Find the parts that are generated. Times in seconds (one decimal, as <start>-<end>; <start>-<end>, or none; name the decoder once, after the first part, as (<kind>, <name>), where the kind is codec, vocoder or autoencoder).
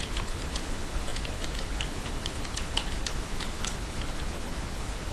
0.0-5.1 (codec, HILCodec)